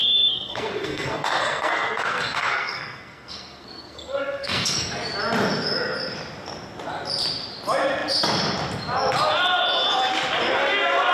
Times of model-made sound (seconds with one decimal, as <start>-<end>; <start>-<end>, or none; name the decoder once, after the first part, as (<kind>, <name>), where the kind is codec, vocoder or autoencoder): 0.0-5.0 (codec, SNAC)